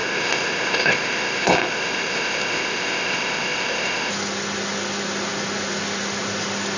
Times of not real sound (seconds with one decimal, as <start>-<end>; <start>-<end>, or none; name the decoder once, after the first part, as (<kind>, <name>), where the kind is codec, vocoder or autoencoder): 0.0-4.1 (codec, ZipCodec)